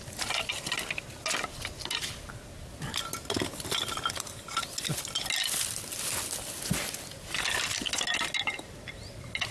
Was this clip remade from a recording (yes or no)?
no